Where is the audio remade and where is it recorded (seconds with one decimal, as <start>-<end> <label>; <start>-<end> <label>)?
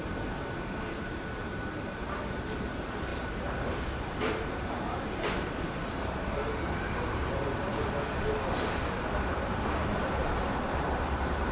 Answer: 0.0-7.7 remade; 7.7-9.1 recorded; 9.1-11.5 remade